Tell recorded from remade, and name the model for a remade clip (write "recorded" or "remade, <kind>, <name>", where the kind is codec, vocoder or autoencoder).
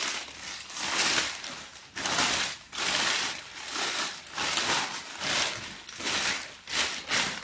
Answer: recorded